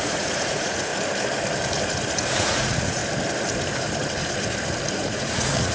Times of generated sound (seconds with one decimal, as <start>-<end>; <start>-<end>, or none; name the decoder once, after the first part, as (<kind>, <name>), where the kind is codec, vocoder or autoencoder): 0.0-0.9 (vocoder, Vocos); 2.3-3.0; 4.9-5.7